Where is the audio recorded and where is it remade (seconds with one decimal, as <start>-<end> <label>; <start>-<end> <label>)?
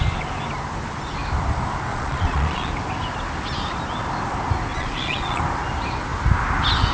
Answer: 0.0-1.9 recorded; 1.9-2.7 remade; 2.7-4.7 recorded; 4.7-5.4 remade; 5.4-6.9 recorded